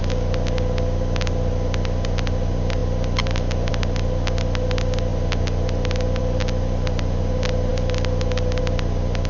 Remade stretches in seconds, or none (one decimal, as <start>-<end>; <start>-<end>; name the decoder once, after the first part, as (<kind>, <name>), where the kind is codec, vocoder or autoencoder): none